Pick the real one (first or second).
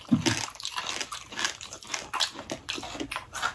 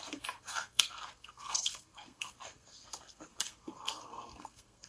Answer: first